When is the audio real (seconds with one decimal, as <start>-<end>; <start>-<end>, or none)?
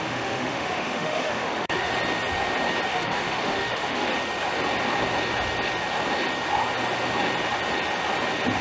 1.9-2.9; 4.1-8.6